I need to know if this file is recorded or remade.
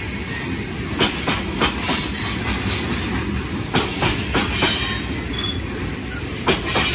recorded